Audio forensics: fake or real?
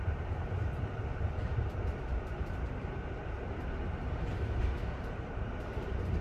fake